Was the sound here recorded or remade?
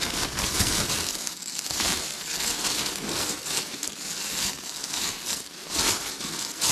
remade